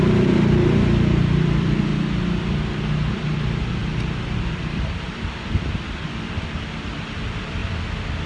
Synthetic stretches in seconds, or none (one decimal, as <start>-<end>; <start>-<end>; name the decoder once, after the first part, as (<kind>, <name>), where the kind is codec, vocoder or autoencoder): 0.0-1.9 (vocoder, BigVGAN v2); 3.1-7.6